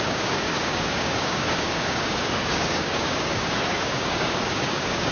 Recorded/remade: remade